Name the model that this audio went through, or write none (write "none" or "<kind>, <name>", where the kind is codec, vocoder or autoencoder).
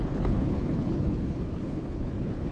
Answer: codec, HILCodec